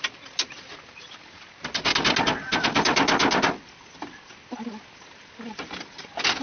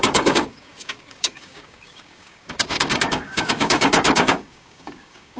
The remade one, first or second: second